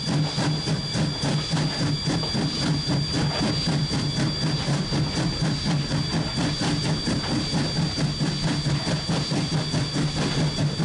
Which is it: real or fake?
real